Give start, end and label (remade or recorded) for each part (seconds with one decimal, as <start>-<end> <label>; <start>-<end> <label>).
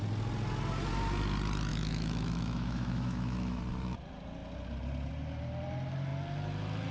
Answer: 0.0-1.7 recorded; 1.7-3.6 remade; 3.6-6.9 recorded